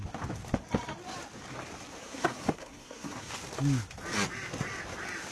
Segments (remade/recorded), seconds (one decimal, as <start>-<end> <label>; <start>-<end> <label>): 0.0-2.0 recorded; 2.0-3.3 remade; 3.3-5.3 recorded